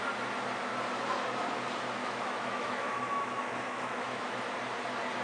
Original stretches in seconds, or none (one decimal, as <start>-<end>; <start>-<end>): 0.0-2.0; 4.4-5.2